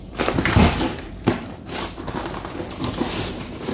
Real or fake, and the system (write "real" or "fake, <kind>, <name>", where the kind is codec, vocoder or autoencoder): fake, vocoder, BigVGAN v2